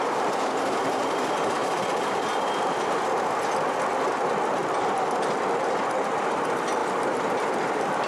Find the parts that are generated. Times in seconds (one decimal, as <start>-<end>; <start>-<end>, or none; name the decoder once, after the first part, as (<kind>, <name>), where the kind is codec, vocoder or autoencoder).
none